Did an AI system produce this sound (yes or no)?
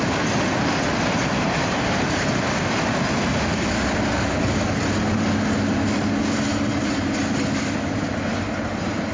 no